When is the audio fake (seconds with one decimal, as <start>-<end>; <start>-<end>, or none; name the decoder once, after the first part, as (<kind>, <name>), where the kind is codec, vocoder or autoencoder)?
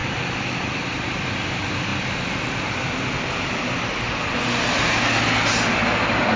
none